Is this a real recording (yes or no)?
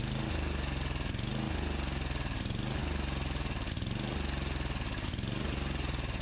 yes